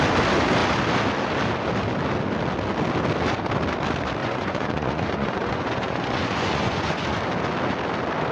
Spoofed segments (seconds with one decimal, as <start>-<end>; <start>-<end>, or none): 4.2-7.2